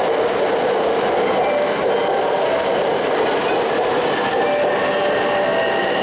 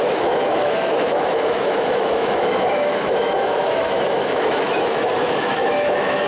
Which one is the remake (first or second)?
second